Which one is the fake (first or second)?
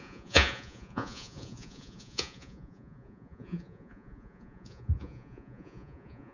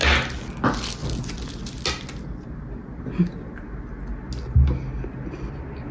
first